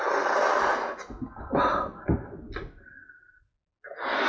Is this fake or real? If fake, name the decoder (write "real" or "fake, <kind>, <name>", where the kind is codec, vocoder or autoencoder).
real